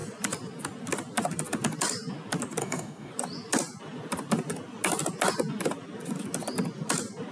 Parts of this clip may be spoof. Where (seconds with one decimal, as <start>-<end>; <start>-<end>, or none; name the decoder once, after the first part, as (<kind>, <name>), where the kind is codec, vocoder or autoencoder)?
2.6-3.1 (codec, DAC)